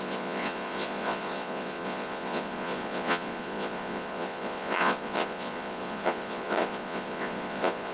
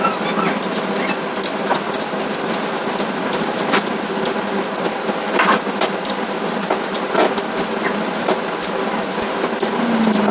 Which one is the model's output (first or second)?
first